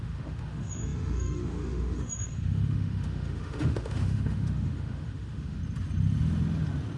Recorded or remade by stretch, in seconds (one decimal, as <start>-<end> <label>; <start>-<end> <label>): 0.0-5.6 remade; 5.6-7.0 recorded